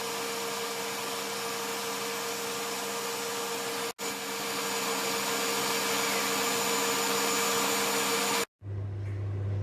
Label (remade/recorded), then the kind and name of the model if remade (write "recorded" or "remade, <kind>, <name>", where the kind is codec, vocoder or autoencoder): recorded